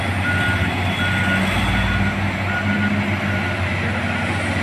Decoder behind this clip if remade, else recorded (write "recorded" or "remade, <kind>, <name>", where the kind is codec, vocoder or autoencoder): recorded